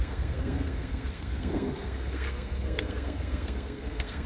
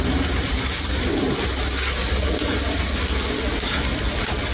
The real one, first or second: second